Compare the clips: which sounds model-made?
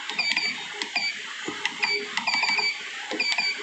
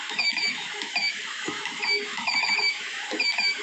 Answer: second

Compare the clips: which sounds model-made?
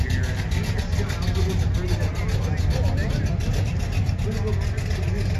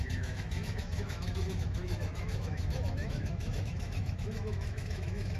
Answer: second